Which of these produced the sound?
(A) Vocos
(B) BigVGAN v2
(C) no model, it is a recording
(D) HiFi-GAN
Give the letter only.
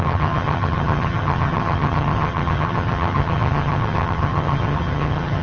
D